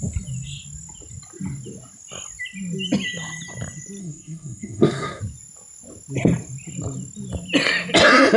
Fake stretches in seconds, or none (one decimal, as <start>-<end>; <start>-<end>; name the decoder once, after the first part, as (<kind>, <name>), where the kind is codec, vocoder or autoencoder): 4.0-5.2 (codec, SNAC)